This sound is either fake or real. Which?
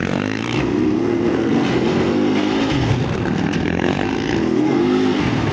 fake